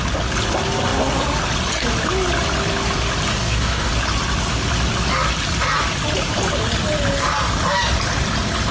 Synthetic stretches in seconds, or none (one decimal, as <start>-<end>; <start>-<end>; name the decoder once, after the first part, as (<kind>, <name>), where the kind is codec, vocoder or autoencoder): 3.3-3.9 (codec, DAC)